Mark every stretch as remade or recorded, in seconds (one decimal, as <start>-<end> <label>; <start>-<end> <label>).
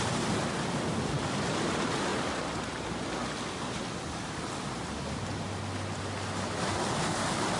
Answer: 0.0-7.6 recorded